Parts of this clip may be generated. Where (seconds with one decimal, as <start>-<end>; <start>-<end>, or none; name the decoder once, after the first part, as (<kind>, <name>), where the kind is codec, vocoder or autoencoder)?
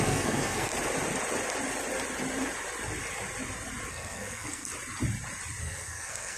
0.0-0.7 (codec, SNAC); 3.9-4.7; 5.6-6.4